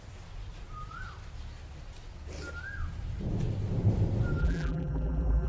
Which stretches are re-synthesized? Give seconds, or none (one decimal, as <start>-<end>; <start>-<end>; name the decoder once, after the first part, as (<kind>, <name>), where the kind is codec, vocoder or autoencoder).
4.4-5.5 (vocoder, BigVGAN v2)